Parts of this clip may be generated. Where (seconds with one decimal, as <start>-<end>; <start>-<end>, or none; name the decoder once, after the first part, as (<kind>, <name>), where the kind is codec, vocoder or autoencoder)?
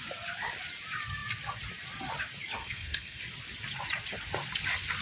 2.6-3.2 (codec, SNAC)